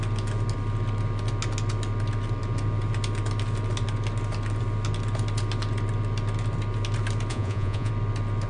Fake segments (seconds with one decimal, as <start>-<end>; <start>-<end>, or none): 7.3-7.9

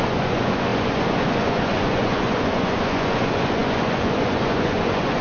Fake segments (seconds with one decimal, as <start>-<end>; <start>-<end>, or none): 0.0-5.2

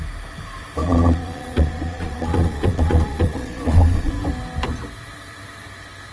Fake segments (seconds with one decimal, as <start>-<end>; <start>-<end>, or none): 0.8-4.1

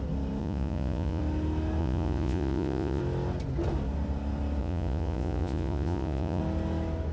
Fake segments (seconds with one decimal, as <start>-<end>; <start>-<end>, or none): 0.4-1.2; 1.8-3.0; 4.6-6.4

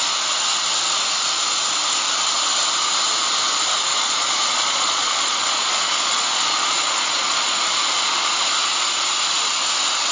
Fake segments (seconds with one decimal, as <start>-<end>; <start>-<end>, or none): 3.9-7.6

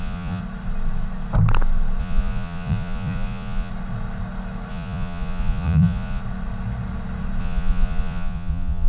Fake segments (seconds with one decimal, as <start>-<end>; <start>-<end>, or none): 0.0-0.4; 2.0-3.7; 4.7-6.2; 7.4-8.9